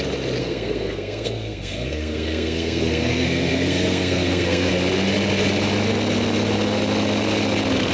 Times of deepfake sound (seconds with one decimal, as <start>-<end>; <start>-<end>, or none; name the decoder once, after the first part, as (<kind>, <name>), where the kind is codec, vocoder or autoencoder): 0.4-4.7 (codec, SNAC)